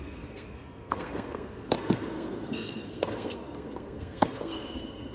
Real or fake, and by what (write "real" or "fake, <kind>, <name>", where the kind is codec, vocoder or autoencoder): fake, codec, SNAC